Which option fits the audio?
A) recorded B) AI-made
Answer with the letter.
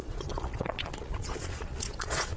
B